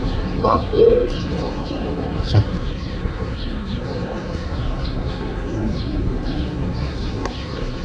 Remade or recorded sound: remade